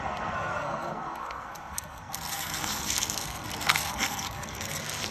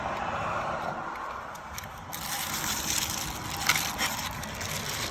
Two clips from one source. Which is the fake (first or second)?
first